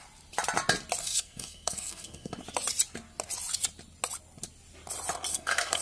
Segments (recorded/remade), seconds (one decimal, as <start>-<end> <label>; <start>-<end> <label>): 0.0-1.0 recorded; 1.0-2.4 remade; 2.4-5.3 recorded; 5.3-5.8 remade